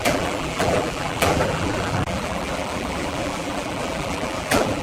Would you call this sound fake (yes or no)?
yes